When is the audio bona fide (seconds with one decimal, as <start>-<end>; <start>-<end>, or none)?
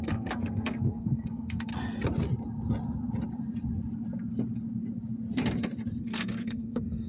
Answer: 1.7-6.0